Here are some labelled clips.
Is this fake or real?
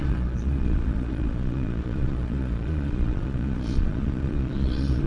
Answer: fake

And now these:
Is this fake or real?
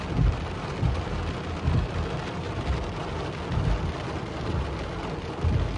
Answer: real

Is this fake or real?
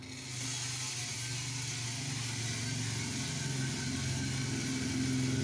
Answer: real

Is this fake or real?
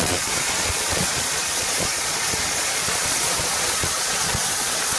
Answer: fake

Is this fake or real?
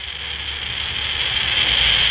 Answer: real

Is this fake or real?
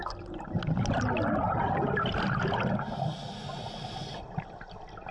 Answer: real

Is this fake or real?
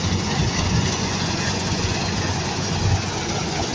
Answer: fake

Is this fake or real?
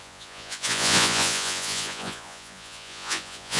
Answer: fake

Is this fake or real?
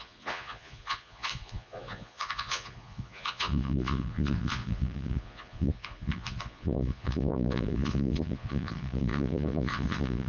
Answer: fake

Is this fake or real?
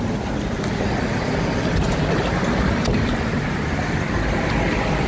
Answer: real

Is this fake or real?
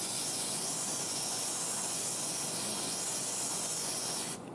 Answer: fake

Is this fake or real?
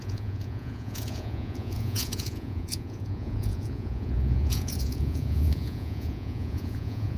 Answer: fake